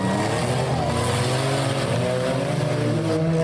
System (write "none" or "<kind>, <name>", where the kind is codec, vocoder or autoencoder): none